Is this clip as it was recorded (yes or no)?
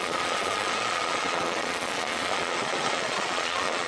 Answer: no